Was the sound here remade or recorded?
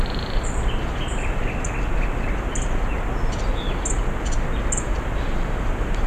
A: recorded